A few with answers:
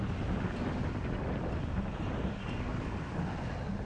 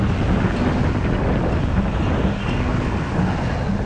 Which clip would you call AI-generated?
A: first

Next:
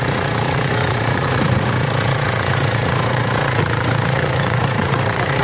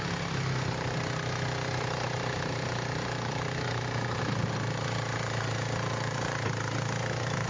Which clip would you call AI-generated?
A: first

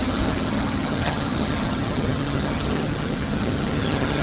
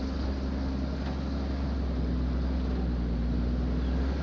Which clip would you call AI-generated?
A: first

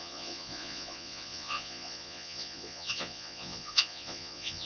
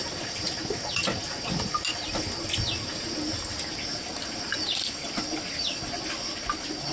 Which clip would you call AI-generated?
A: first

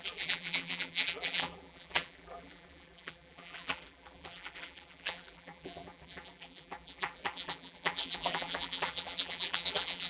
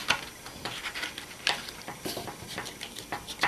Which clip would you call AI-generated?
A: first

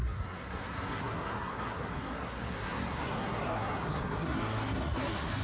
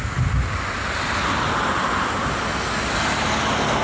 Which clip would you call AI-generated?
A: first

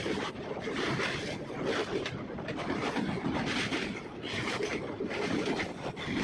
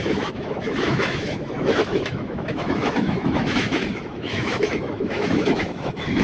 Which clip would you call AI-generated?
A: second